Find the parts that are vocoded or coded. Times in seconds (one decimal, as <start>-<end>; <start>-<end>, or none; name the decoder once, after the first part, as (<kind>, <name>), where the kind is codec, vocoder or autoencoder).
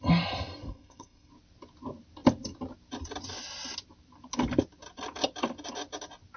0.6-1.3 (codec, SNAC)